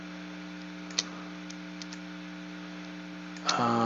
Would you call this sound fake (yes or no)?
no